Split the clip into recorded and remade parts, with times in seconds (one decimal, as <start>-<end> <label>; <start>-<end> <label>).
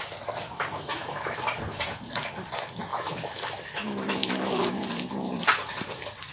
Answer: 0.0-0.9 recorded; 0.9-1.4 remade; 1.4-2.9 recorded; 2.9-4.8 remade; 4.8-6.3 recorded